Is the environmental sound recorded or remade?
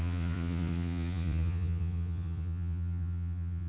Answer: remade